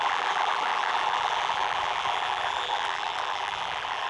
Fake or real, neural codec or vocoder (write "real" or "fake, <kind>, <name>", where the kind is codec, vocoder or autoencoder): fake, vocoder, BigVGAN v2